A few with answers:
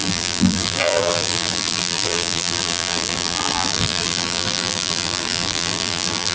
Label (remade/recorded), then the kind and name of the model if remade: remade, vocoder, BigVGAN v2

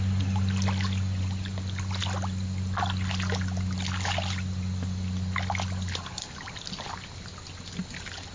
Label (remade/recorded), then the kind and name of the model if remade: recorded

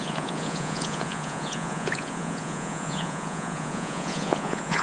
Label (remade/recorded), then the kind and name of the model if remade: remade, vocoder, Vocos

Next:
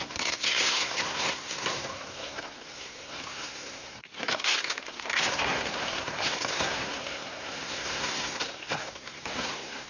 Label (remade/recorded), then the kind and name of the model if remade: remade, codec, SNAC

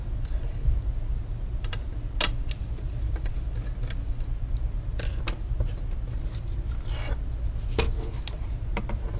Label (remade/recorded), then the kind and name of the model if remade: recorded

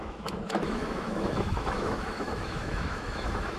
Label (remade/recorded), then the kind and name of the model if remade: remade, autoencoder, DAC-VAE